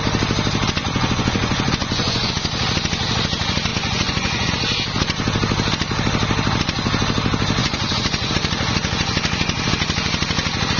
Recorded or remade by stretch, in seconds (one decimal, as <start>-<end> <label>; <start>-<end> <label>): 0.0-0.8 recorded; 0.8-2.3 remade; 2.3-3.7 recorded; 3.7-4.5 remade; 4.5-7.6 recorded; 7.6-8.3 remade; 8.3-10.8 recorded